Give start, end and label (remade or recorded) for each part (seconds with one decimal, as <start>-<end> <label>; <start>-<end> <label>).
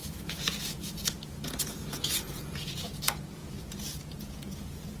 0.0-5.0 remade